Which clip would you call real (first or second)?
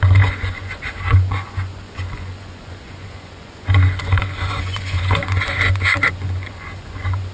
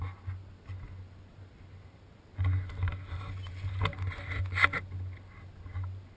second